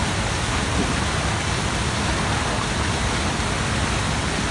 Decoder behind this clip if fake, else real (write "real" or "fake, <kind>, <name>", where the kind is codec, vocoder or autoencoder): real